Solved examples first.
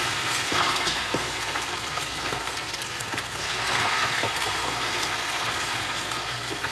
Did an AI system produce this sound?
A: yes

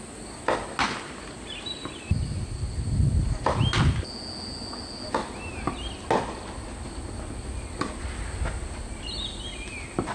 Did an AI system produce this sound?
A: no